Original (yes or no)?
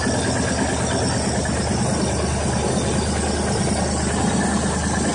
yes